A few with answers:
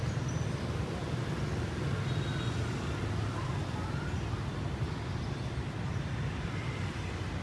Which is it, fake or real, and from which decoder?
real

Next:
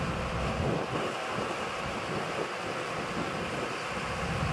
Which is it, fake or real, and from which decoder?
real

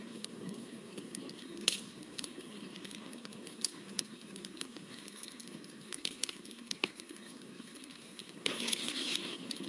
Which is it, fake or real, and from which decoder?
fake, codec, SNAC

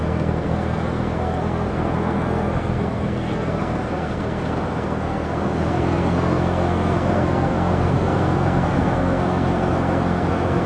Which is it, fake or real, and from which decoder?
fake, codec, SNAC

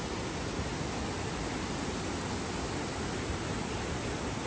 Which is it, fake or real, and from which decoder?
real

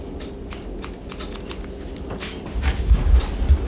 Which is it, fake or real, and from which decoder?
real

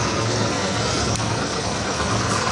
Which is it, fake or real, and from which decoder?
fake, codec, SNAC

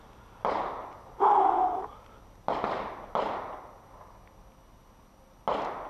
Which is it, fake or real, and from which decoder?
real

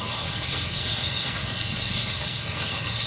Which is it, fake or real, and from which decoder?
fake, codec, SNAC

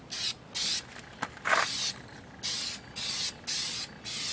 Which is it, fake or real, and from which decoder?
real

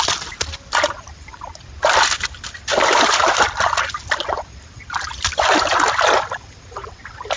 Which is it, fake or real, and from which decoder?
real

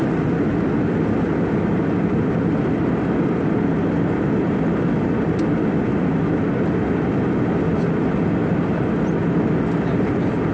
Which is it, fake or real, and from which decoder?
real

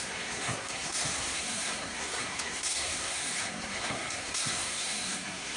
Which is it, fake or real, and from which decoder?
fake, codec, SNAC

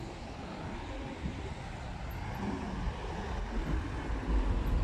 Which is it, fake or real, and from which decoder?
real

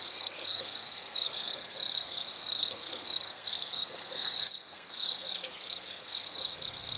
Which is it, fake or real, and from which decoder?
fake, codec, SNAC